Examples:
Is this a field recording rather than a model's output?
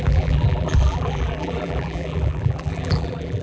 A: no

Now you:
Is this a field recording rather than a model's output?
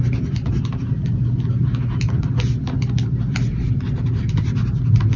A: yes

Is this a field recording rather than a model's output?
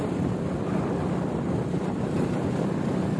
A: yes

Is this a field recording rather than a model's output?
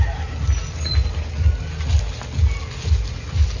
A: yes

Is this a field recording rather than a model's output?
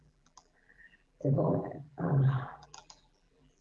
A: no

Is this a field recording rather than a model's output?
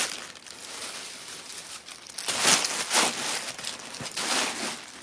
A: yes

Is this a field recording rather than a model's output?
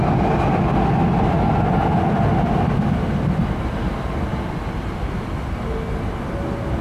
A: yes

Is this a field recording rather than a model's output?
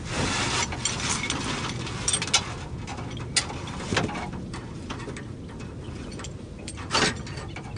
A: yes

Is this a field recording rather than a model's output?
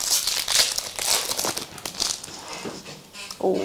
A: yes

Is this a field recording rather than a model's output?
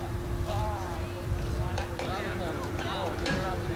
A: no